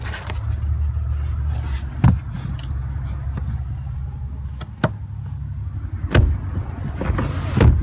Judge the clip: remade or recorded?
recorded